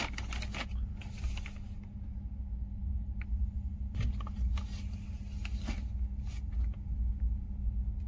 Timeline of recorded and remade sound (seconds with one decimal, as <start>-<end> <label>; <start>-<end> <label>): 0.0-8.1 recorded